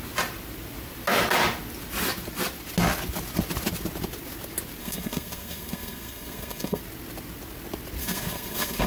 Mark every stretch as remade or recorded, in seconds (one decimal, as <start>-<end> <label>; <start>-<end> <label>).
0.0-4.8 recorded; 4.8-6.8 remade; 6.8-8.0 recorded; 8.0-8.9 remade